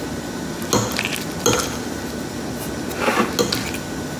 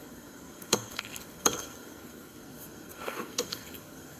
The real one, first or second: first